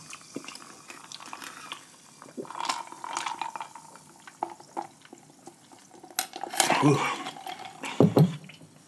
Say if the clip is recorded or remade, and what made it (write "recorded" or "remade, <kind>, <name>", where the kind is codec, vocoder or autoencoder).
recorded